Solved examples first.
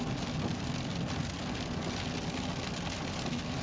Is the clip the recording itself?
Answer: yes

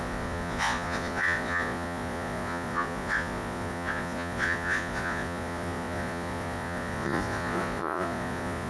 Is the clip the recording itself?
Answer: no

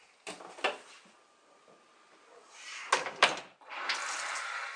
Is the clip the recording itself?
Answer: yes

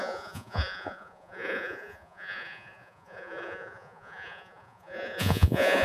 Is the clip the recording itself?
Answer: no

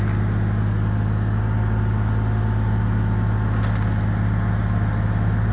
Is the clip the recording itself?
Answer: yes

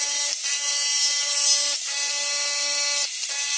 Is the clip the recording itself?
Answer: yes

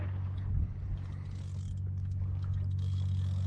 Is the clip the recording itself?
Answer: yes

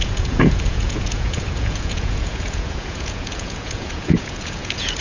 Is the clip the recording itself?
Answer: no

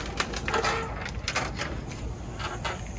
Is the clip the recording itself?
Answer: yes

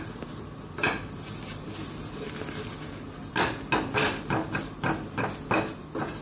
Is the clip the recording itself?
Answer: yes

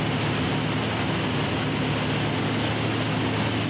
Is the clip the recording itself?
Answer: yes